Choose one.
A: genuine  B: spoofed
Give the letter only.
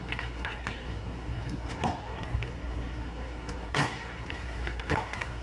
B